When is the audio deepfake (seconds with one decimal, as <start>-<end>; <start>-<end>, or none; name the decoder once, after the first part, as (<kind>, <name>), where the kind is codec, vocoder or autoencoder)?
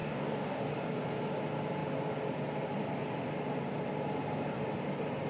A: 0.0-0.6 (codec, DAC)